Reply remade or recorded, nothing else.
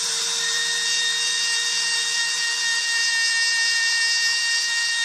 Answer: remade